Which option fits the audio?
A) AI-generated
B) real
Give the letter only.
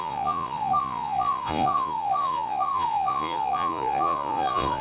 A